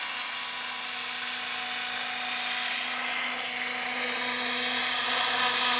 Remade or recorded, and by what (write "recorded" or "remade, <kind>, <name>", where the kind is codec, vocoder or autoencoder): recorded